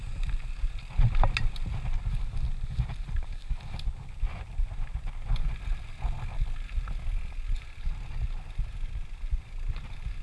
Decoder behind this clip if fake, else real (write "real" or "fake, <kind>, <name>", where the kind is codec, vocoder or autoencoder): real